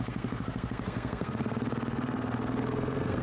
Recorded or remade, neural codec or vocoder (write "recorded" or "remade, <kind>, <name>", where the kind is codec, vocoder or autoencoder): remade, codec, SNAC